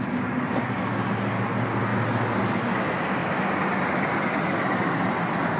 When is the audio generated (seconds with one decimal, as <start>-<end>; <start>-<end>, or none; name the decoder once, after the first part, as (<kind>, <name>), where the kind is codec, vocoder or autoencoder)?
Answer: none